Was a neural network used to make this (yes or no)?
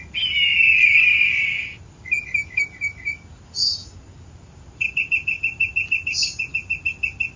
no